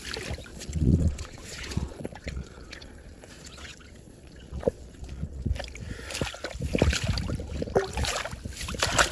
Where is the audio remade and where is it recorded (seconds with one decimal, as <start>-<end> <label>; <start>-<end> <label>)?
0.0-0.5 recorded; 0.5-5.5 remade; 5.5-9.1 recorded